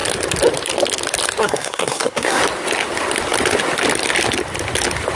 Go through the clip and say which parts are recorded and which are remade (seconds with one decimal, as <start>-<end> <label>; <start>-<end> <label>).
0.0-1.4 recorded; 1.4-2.4 remade; 2.4-5.2 recorded